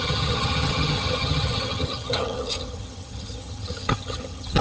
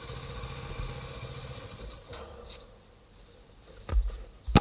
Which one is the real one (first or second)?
second